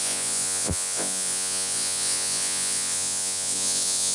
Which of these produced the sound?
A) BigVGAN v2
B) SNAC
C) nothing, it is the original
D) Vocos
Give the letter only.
D